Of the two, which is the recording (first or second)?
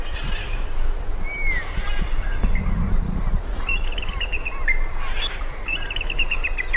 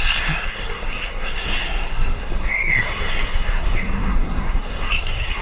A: first